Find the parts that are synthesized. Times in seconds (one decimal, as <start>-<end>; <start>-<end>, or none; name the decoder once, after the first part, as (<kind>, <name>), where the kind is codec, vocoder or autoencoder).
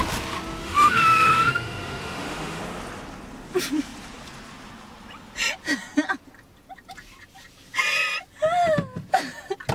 0.6-2.6 (autoencoder, DAC-VAE)